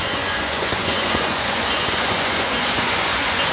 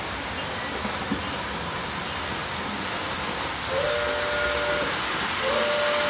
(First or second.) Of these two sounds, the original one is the second